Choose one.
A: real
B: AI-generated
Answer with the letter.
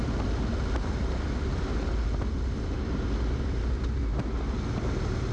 A